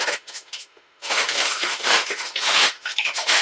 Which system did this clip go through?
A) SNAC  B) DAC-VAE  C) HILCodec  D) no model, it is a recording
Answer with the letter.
B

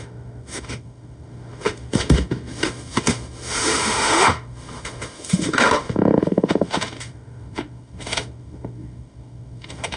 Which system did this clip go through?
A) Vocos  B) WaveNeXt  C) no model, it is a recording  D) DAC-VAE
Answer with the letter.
D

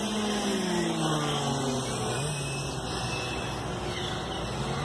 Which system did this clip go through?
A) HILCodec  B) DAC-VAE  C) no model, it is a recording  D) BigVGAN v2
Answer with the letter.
C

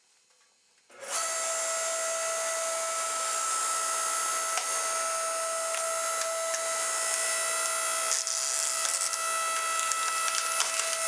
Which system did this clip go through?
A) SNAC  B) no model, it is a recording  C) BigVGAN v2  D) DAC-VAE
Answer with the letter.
B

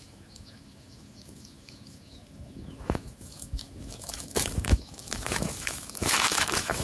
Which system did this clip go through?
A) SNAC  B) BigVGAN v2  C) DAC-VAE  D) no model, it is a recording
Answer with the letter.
C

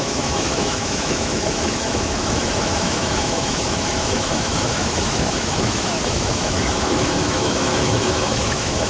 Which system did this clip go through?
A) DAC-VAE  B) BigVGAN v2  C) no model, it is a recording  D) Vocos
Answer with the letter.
A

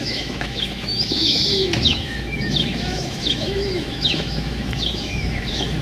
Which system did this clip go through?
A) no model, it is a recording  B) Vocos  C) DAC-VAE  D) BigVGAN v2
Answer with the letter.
C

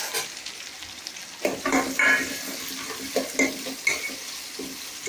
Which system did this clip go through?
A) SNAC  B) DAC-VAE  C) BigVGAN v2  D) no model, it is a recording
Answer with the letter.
D